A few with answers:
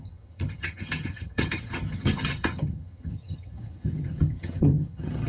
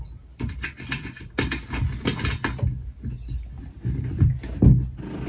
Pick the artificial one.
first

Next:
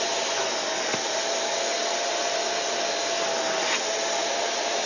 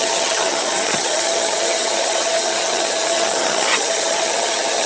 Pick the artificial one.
second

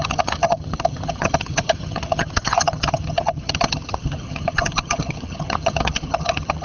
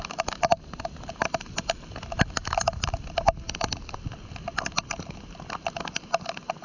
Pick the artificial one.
first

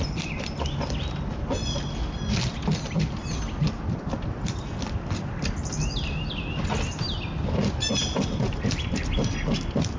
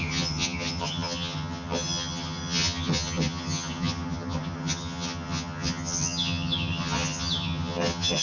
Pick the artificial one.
second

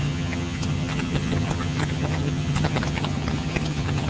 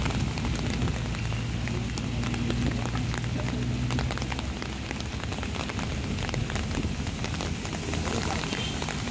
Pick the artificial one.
first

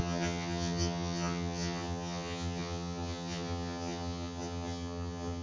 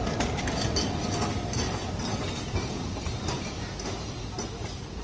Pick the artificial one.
first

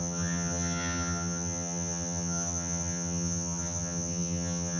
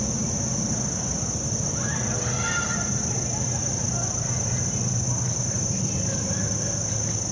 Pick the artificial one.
first